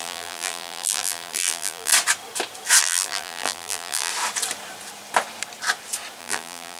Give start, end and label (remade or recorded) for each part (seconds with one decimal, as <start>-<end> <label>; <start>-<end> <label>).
0.0-1.9 remade; 1.9-2.8 recorded; 2.8-4.1 remade; 4.1-6.2 recorded; 6.2-6.8 remade

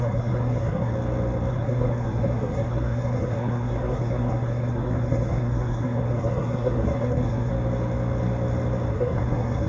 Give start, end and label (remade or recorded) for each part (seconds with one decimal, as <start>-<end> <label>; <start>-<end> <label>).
0.0-0.9 remade; 0.9-1.5 recorded; 1.5-7.5 remade; 7.5-8.9 recorded; 8.9-9.7 remade

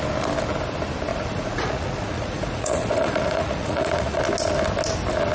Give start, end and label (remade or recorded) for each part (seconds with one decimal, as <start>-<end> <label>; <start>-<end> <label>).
0.0-1.1 recorded; 1.1-4.2 remade; 4.2-5.3 recorded

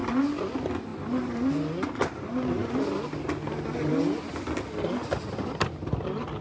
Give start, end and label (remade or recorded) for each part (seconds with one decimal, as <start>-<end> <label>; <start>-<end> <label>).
0.0-6.4 recorded

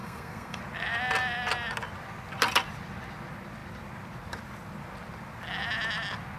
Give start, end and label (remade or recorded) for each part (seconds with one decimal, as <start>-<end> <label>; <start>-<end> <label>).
0.0-0.6 remade; 0.6-6.4 recorded

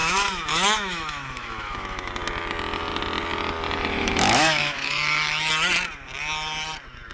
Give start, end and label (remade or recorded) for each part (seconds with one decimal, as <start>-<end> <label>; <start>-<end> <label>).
0.0-2.1 remade; 2.1-4.0 recorded; 4.0-5.5 remade; 5.5-7.1 recorded

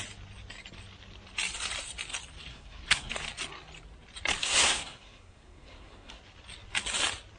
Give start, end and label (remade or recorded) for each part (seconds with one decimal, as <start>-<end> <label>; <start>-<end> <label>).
0.0-2.5 recorded; 2.5-3.1 remade; 3.1-4.4 recorded; 4.4-6.2 remade; 6.2-7.4 recorded